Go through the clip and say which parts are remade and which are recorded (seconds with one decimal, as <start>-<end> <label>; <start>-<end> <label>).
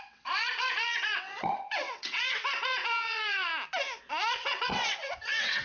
0.0-3.5 remade; 3.5-4.1 recorded; 4.1-5.6 remade